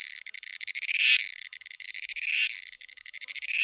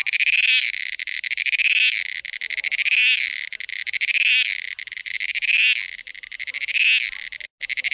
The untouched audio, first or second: second